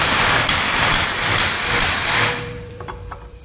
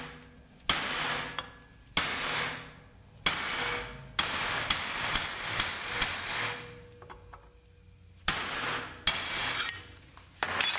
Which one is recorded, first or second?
second